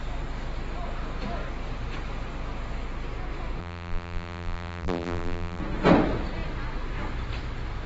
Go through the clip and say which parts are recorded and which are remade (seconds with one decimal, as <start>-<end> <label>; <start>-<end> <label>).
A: 0.0-3.6 recorded; 3.6-5.6 remade; 5.6-7.9 recorded